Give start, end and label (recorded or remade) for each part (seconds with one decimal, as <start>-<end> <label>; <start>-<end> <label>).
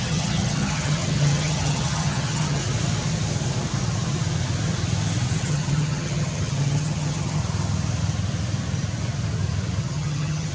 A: 0.0-2.6 remade; 2.6-5.4 recorded; 5.4-7.4 remade; 7.4-9.8 recorded; 9.8-10.5 remade